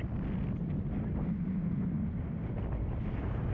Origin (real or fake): real